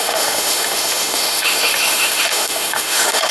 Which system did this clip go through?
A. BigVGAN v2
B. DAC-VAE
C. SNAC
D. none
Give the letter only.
B